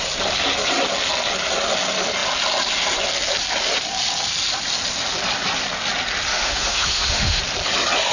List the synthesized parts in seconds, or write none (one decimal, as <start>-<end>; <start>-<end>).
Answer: 6.3-7.4